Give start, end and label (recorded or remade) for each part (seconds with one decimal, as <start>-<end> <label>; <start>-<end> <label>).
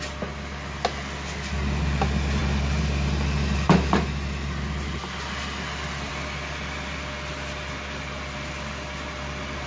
0.0-9.7 recorded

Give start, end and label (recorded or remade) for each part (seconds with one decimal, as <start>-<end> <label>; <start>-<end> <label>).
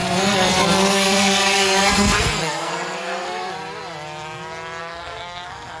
0.0-3.5 remade; 3.5-4.8 recorded; 4.8-5.8 remade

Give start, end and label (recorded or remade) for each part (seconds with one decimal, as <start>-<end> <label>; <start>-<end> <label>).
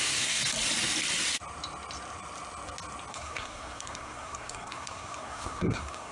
0.0-0.4 remade; 0.4-3.1 recorded; 3.1-6.1 remade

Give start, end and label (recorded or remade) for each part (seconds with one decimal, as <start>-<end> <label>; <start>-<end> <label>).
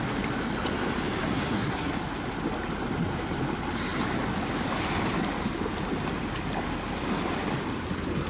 0.0-1.3 recorded; 1.3-1.9 remade; 1.9-8.3 recorded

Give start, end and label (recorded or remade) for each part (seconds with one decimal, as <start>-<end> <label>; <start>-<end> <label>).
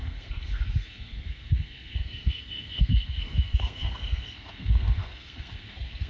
0.0-6.1 remade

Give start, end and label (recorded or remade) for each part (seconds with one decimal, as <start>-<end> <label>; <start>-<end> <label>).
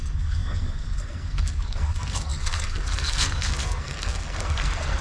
0.0-5.0 remade